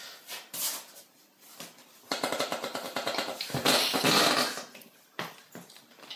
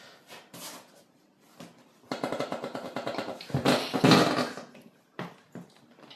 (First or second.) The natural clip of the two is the second